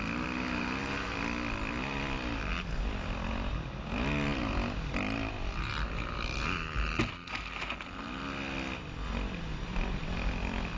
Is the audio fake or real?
real